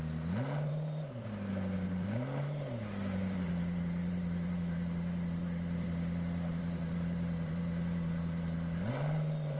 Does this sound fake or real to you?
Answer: fake